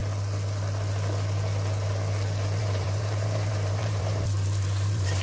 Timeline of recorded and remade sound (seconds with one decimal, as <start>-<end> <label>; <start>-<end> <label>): 0.0-2.6 recorded; 2.6-5.2 remade